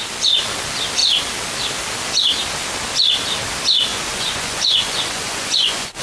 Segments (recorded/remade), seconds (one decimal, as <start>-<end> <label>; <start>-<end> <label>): 0.0-3.9 recorded; 3.9-6.0 remade